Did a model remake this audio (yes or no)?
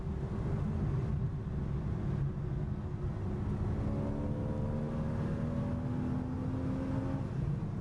no